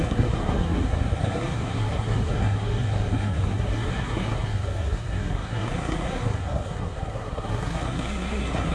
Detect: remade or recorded remade